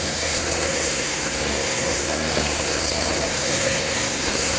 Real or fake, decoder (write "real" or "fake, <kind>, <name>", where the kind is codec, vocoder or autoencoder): fake, codec, SNAC